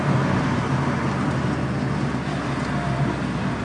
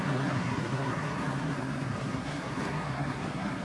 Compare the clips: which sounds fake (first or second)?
second